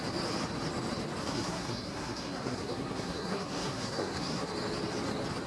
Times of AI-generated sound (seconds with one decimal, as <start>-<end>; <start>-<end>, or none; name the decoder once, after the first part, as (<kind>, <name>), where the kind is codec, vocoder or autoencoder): 1.2-4.5 (codec, SNAC)